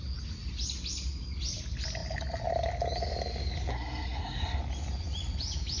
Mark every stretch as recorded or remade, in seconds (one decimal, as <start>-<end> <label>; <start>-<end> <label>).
0.0-3.7 recorded; 3.7-4.6 remade; 4.6-5.8 recorded